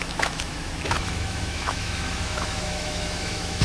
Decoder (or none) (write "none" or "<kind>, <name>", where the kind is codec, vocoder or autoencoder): autoencoder, DAC-VAE